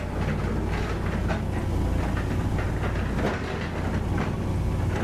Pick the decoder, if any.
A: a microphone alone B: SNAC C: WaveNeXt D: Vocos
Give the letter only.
A